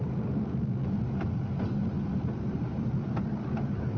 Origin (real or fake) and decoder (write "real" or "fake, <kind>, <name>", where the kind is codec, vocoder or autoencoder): real